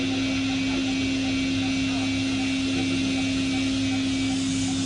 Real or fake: real